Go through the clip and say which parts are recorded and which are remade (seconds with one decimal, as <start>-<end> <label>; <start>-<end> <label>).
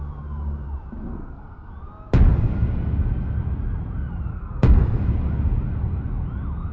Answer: 0.0-1.1 recorded; 1.1-1.7 remade; 1.7-4.3 recorded; 4.3-5.0 remade; 5.0-6.7 recorded